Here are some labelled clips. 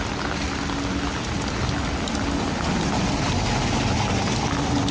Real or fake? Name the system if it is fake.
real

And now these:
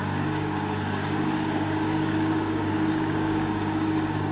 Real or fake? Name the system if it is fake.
fake, codec, DAC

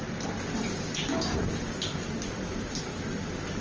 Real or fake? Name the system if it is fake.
fake, vocoder, BigVGAN v2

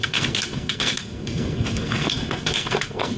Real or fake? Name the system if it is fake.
fake, codec, SNAC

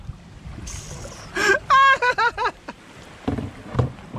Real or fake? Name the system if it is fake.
real